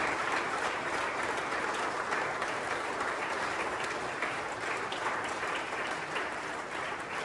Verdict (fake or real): fake